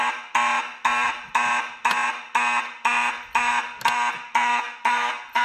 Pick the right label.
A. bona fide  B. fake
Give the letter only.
A